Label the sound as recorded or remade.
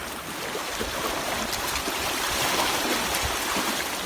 recorded